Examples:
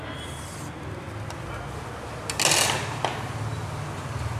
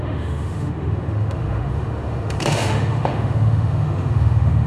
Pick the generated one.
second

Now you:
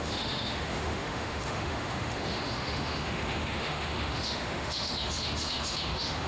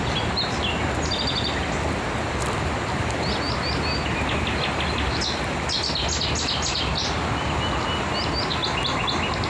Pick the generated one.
first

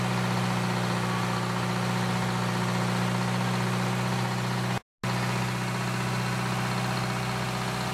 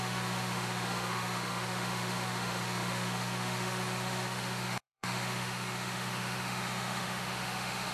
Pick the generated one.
second